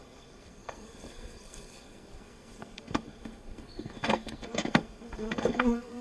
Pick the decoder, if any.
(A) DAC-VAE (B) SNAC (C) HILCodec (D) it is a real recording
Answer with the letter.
B